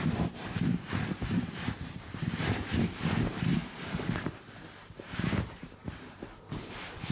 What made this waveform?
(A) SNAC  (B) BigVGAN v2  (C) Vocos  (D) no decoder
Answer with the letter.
B